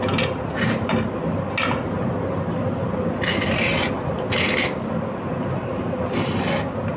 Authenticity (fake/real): real